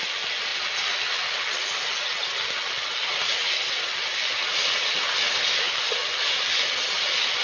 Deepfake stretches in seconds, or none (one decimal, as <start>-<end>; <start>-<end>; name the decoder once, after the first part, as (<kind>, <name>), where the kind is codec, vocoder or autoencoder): none